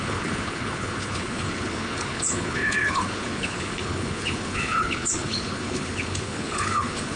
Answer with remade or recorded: remade